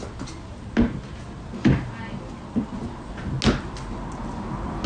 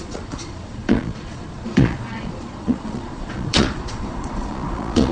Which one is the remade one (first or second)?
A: second